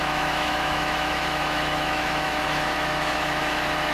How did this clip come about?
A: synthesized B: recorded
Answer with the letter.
A